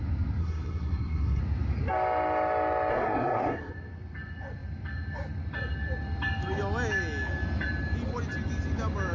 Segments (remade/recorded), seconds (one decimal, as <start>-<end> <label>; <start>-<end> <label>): 0.0-0.4 recorded; 0.4-1.4 remade; 1.4-2.9 recorded; 2.9-3.7 remade; 3.7-9.1 recorded